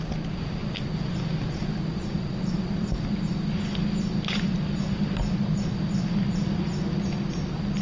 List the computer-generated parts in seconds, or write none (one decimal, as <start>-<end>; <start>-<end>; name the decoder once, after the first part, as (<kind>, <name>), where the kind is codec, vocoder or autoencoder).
none